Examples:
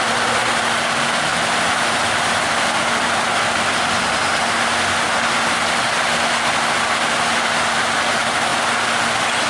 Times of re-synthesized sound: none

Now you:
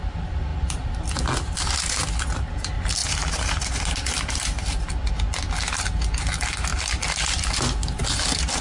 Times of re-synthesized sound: 0.5-1.1 (vocoder, BigVGAN v2); 3.0-5.1; 6.7-7.4

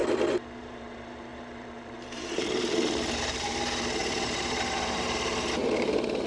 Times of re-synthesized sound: 0.6-6.3 (vocoder, BigVGAN v2)

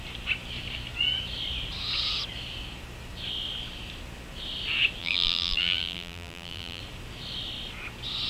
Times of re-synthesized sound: 5.0-6.8 (vocoder, BigVGAN v2)

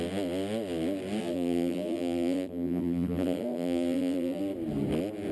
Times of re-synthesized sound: 1.2-4.4 (vocoder, BigVGAN v2)